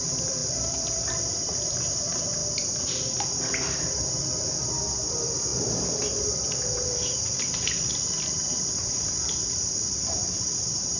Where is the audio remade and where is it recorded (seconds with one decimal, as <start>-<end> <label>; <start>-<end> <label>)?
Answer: 0.0-2.4 remade; 2.4-4.6 recorded; 4.6-11.0 remade